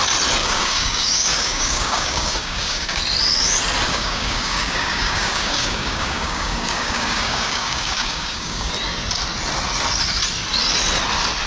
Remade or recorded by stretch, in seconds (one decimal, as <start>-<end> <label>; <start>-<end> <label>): 0.0-0.4 recorded; 0.4-3.0 remade; 3.0-3.9 recorded; 3.9-8.7 remade; 8.7-11.5 recorded